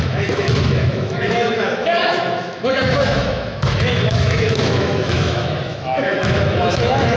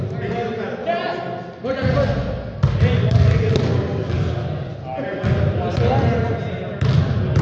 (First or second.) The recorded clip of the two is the second